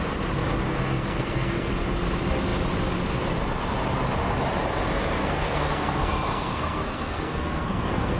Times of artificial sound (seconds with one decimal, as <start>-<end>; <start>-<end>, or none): 0.7-1.7; 5.2-8.2